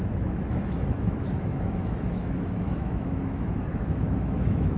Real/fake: fake